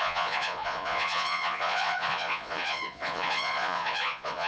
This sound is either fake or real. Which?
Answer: fake